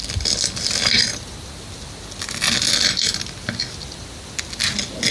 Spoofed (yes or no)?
no